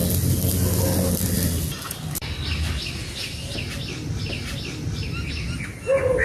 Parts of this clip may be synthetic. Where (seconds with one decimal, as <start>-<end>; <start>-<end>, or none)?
none

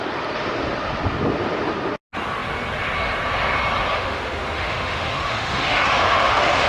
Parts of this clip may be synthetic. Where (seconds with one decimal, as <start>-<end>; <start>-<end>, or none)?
3.9-6.7

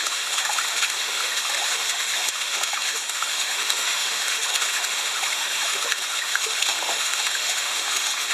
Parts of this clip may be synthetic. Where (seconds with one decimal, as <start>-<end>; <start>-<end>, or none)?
0.0-8.3

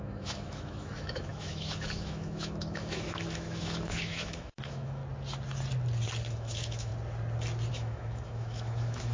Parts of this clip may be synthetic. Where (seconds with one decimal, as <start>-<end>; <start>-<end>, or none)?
0.0-5.0; 6.3-6.9; 7.7-9.1

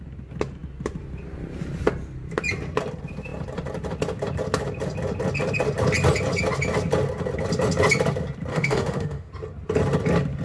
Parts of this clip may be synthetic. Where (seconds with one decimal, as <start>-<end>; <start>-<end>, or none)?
8.5-9.3

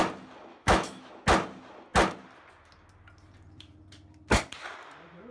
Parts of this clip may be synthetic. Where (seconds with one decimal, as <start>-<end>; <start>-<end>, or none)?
0.5-1.1